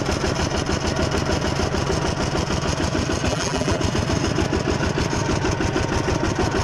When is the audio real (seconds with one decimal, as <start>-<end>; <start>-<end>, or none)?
0.0-3.3; 3.8-6.6